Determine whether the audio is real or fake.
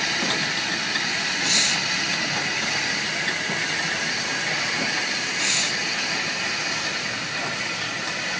real